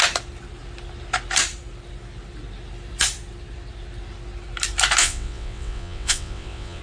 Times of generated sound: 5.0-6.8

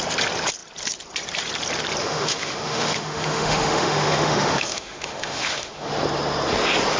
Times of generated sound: 2.0-5.9

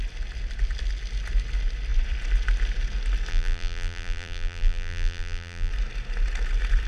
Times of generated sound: 3.3-5.7